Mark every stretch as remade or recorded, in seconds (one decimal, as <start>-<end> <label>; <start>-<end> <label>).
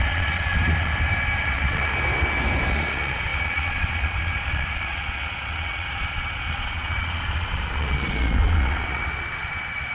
0.0-0.9 remade; 0.9-1.4 recorded; 1.4-1.9 remade; 1.9-2.7 recorded; 2.7-9.9 remade